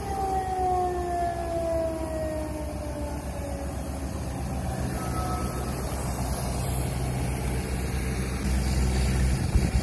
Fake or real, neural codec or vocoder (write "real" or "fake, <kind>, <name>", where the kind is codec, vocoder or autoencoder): real